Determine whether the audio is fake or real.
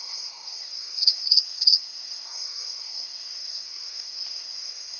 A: fake